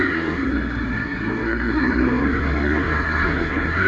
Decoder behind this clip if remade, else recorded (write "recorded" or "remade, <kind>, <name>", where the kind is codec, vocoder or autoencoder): remade, codec, SNAC